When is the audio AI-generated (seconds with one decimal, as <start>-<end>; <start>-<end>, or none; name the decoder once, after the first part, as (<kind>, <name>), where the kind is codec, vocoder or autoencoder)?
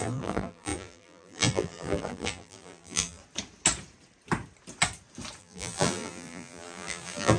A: 0.0-3.2 (vocoder, BigVGAN v2); 5.4-7.4